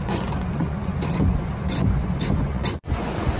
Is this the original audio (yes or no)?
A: no